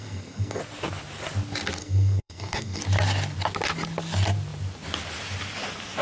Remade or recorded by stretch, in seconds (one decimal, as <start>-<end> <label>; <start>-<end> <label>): 0.0-0.6 remade; 0.6-1.8 recorded; 1.8-2.8 remade; 2.8-6.0 recorded